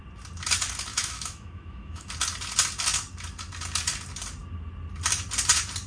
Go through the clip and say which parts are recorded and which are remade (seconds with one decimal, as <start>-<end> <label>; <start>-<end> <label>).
0.0-0.9 recorded; 0.9-2.1 remade; 2.1-5.9 recorded